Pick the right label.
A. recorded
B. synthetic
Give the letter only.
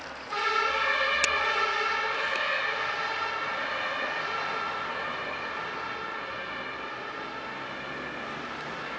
A